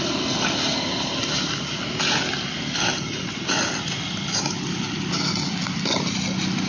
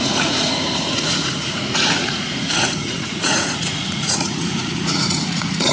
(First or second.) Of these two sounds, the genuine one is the first